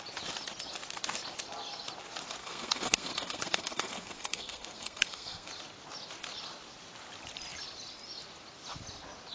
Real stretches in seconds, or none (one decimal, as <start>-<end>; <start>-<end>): 0.0-2.4; 5.5-9.3

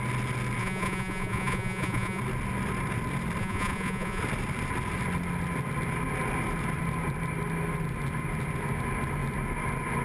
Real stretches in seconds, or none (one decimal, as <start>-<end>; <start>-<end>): 0.0-0.6; 2.2-3.4; 4.2-10.0

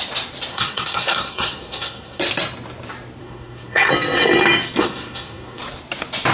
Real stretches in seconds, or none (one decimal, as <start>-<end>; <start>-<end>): 0.0-0.5; 2.2-3.2; 3.9-4.8; 5.6-6.3

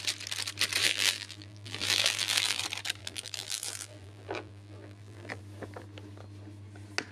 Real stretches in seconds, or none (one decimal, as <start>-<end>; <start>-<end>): 0.0-0.8; 2.6-3.0; 5.4-7.1

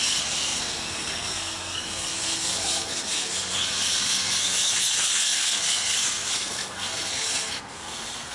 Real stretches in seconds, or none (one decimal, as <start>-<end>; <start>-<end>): none